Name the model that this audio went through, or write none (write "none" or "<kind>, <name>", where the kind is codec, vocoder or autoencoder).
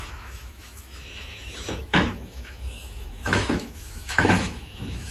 autoencoder, DAC-VAE